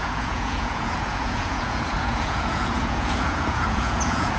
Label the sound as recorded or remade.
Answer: remade